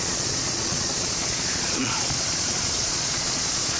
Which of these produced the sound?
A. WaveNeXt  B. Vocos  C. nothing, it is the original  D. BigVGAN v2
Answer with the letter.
B